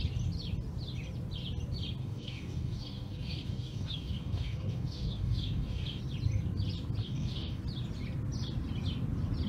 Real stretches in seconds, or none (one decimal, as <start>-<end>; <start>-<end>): 0.0-2.0; 6.0-7.0; 7.6-9.5